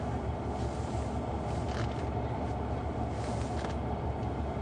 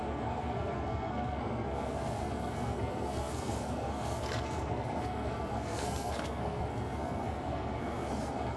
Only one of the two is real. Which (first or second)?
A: first